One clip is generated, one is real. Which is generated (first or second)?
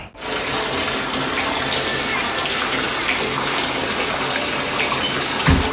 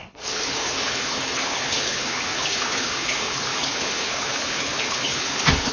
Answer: second